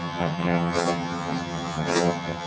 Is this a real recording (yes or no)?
no